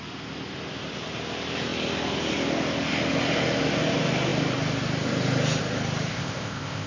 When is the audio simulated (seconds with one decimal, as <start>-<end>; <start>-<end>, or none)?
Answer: 6.1-6.9